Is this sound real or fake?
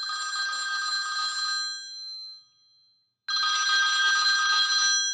real